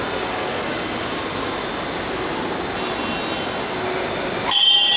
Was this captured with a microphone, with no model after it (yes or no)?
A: yes